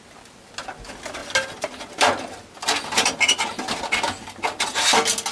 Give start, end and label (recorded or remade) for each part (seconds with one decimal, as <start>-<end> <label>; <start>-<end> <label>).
0.0-5.3 recorded